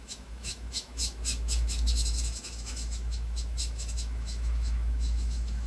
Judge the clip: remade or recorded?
remade